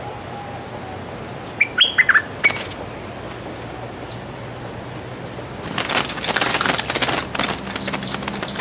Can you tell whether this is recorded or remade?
recorded